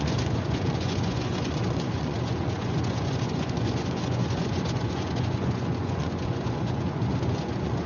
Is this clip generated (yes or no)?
yes